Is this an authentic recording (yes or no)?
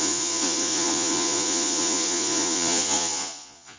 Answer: no